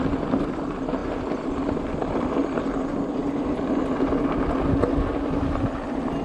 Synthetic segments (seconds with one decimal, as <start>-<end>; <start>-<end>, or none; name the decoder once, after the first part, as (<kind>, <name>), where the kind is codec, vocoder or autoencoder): none